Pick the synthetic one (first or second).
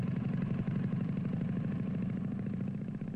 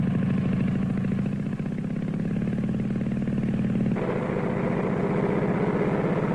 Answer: first